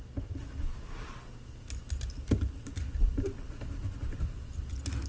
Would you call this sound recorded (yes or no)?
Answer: yes